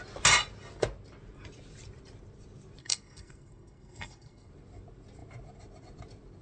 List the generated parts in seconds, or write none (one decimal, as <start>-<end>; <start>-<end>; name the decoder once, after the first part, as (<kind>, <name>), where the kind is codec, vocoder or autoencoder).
2.8-4.5 (codec, SNAC)

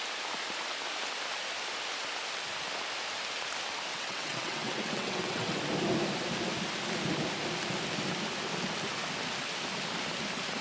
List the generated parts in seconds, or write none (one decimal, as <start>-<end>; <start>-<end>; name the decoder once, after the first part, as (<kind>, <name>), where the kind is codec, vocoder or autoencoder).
3.9-5.6 (vocoder, WaveNeXt)

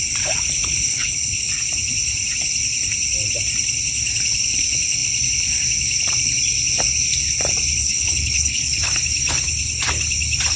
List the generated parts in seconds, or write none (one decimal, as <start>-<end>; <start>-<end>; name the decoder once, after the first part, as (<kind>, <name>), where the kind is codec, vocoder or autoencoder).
0.9-1.4 (codec, HILCodec); 7.8-8.9

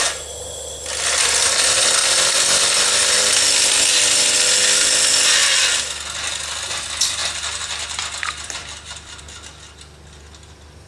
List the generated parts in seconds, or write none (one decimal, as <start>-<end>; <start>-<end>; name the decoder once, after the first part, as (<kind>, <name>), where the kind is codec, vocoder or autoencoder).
2.0-3.3 (vocoder, BigVGAN v2); 7.2-9.2

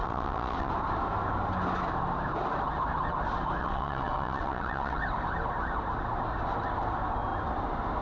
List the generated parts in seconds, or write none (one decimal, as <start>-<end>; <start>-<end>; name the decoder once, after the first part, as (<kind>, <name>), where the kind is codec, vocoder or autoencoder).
0.0-0.7 (vocoder, WaveNeXt); 3.6-5.0